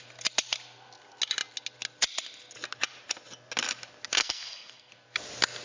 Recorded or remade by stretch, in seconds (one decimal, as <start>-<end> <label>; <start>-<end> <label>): 0.0-4.2 recorded; 4.2-4.9 remade; 4.9-5.6 recorded